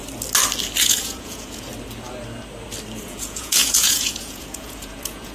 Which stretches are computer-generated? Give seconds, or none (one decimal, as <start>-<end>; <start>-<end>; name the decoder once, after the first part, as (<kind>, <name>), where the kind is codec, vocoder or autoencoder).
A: 0.8-1.7 (vocoder, Vocos); 3.0-5.3